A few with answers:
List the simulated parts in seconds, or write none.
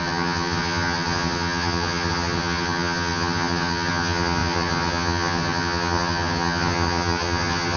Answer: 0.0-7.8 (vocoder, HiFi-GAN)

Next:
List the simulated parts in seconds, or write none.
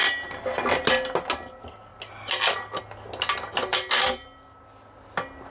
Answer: none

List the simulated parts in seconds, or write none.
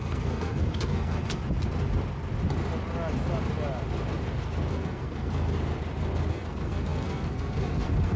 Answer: 0.0-1.4 (codec, SNAC); 4.7-5.5; 6.3-8.2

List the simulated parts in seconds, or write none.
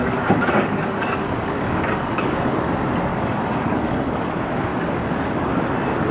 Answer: 0.0-2.7 (codec, DAC); 3.1-4.3; 4.7-5.6